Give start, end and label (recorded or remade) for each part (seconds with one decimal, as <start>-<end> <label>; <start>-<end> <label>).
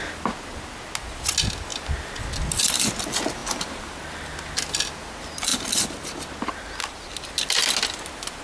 0.0-8.4 recorded